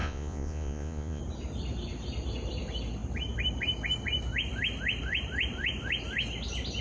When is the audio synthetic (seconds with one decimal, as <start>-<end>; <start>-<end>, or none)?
0.0-1.2